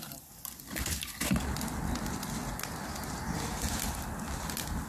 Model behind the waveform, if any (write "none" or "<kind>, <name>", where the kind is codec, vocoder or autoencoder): none